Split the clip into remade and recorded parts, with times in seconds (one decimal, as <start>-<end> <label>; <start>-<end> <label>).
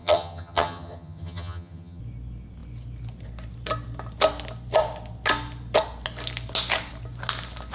0.0-2.0 remade; 2.0-7.7 recorded